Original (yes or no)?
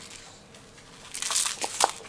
yes